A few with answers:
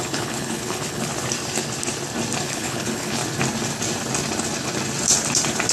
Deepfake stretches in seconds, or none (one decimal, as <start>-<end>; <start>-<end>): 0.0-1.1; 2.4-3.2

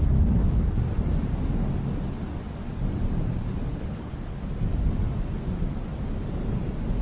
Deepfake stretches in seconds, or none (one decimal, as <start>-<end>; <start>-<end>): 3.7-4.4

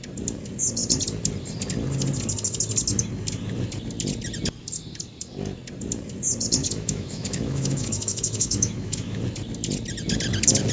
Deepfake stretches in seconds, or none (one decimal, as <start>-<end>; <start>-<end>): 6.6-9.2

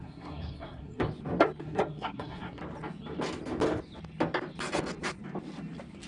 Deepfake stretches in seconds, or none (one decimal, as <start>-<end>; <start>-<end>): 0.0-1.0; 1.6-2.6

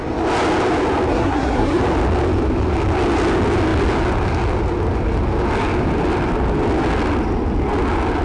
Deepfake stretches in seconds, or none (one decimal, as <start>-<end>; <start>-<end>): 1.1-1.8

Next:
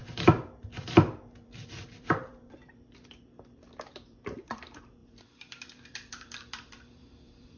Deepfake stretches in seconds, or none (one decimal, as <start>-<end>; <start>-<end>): 0.0-4.5; 5.0-7.6